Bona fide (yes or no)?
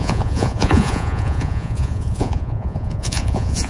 no